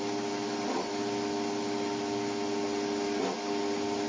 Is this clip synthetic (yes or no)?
no